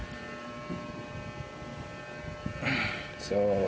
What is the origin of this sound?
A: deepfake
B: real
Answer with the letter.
B